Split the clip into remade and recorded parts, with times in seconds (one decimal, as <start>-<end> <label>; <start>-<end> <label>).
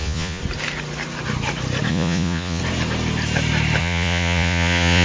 0.0-0.4 remade; 0.4-1.9 recorded; 1.9-2.6 remade; 2.6-3.8 recorded; 3.8-5.0 remade